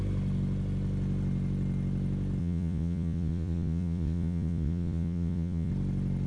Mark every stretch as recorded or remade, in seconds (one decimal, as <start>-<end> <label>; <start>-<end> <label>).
0.0-2.4 recorded; 2.4-5.7 remade; 5.7-6.3 recorded